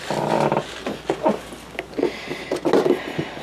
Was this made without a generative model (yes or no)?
yes